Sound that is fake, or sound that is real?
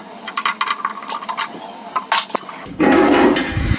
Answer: real